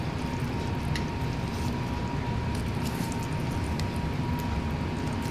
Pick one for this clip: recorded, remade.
recorded